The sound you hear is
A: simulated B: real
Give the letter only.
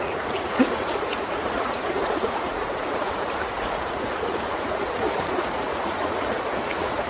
A